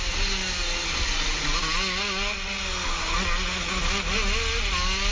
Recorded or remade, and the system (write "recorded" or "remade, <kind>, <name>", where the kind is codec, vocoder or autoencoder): recorded